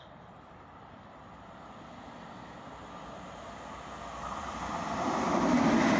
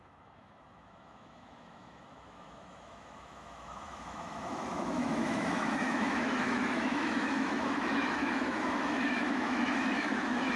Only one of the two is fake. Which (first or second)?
second